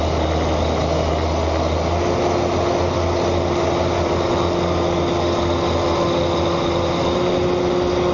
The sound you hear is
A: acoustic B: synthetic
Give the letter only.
A